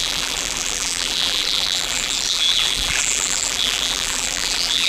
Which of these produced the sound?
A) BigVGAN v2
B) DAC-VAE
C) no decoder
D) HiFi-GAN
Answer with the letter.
A